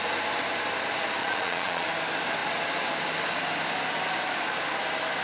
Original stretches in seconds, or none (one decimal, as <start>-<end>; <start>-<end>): 0.0-1.2; 1.9-5.2